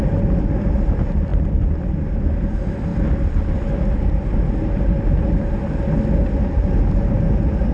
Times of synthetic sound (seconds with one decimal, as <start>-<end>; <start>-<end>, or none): none